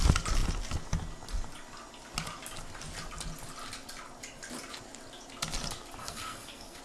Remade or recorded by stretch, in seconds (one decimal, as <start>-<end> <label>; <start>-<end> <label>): 0.0-6.0 recorded; 6.0-6.8 remade